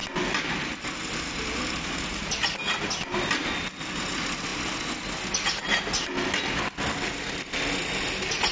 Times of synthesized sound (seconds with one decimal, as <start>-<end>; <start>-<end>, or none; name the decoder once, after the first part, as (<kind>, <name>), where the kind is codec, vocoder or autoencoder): none